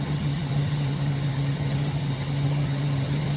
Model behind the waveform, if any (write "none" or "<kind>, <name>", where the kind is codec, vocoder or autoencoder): vocoder, HiFi-GAN